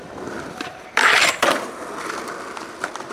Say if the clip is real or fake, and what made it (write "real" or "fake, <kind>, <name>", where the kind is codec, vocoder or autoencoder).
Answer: fake, vocoder, BigVGAN v2